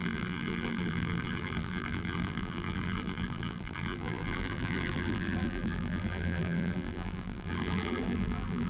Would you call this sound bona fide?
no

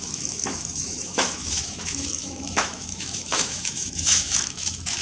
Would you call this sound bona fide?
no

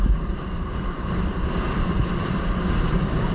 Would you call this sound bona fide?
no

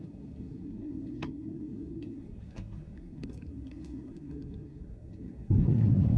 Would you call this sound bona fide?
no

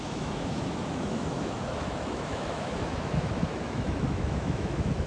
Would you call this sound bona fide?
no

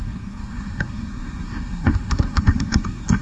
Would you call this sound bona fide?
no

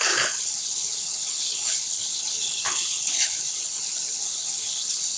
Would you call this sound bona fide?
no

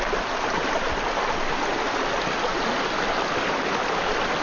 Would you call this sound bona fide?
yes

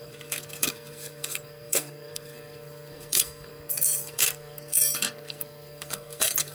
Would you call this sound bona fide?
no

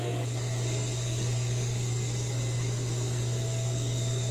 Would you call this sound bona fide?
no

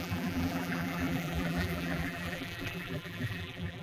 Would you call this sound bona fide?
no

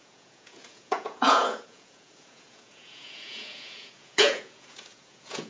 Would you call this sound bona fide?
no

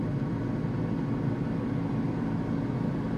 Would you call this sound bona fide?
yes